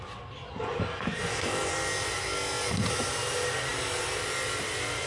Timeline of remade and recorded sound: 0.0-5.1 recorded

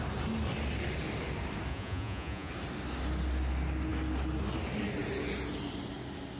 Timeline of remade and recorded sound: 0.0-1.7 recorded; 1.7-2.5 remade; 2.5-6.4 recorded

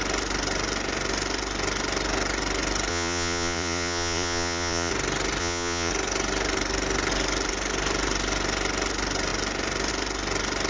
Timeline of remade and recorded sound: 0.0-2.9 recorded; 2.9-4.9 remade; 4.9-5.4 recorded; 5.4-5.9 remade; 5.9-10.7 recorded

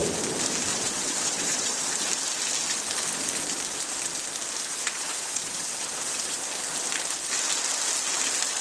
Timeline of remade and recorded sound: 0.0-0.7 recorded; 0.7-1.9 remade; 1.9-4.7 recorded; 4.7-6.4 remade; 6.4-8.6 recorded

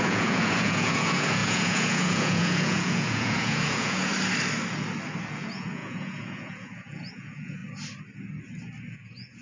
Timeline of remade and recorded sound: 0.0-4.1 remade; 4.1-5.3 recorded; 5.3-7.6 remade; 7.6-8.9 recorded; 8.9-9.4 remade